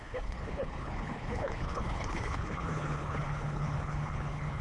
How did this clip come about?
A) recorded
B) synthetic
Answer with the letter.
B